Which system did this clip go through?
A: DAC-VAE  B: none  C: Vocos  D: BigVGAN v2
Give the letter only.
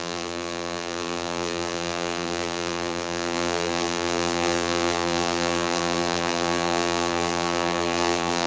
D